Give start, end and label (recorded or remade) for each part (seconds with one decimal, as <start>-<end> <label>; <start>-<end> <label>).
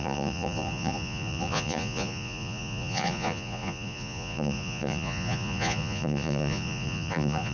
0.0-7.5 remade